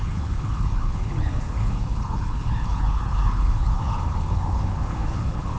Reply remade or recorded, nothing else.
remade